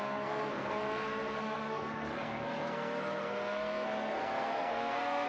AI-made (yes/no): yes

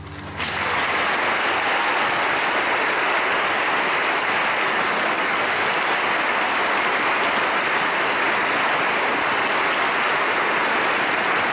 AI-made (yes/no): no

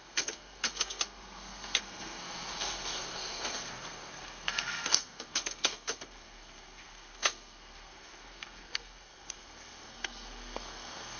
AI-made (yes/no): yes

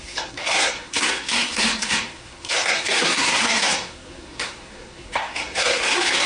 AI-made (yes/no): yes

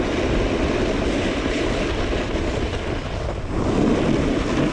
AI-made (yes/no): no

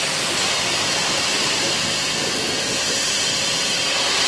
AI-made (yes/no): no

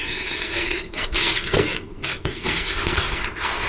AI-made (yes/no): yes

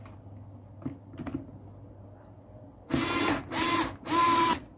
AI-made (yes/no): no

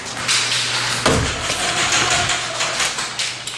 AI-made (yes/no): no